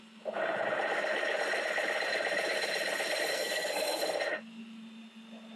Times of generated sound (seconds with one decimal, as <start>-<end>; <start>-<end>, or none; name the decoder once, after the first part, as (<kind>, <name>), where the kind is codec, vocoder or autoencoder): 3.3-4.0 (codec, SNAC)